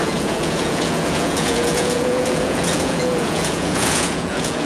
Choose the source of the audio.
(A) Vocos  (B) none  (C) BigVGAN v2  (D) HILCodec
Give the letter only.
A